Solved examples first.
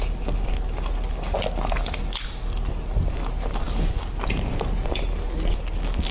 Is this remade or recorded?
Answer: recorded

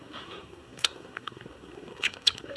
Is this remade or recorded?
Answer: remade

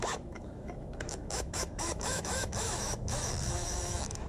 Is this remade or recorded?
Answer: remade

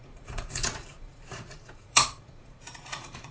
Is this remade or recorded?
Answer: remade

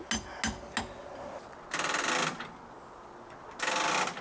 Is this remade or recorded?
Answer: recorded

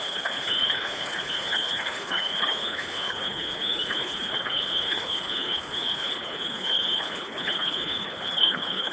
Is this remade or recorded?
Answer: remade